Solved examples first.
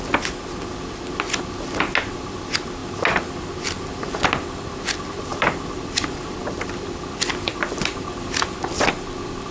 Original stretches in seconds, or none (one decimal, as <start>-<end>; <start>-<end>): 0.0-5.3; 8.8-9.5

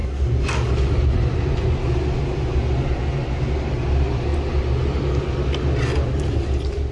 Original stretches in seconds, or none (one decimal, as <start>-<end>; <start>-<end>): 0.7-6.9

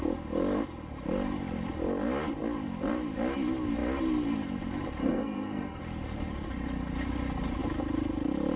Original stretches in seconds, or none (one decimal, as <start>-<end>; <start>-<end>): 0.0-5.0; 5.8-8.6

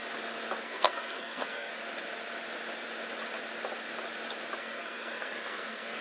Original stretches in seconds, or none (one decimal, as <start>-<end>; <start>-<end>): 0.0-0.6; 1.7-4.6

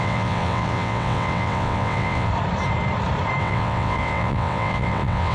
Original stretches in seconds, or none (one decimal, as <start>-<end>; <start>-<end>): 2.3-3.4

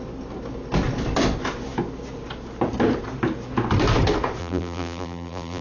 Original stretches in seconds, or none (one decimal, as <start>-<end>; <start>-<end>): 0.0-4.4